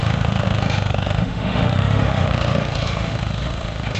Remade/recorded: remade